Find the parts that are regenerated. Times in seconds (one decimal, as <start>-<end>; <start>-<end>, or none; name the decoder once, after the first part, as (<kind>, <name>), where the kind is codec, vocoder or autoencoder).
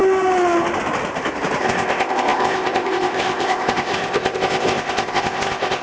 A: 1.6-5.8 (codec, ZipCodec)